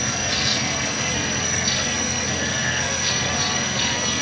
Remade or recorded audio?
remade